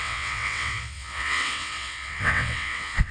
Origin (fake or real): fake